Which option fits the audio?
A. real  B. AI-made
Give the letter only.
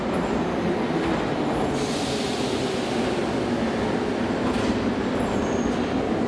A